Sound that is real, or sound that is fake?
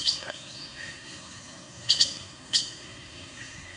fake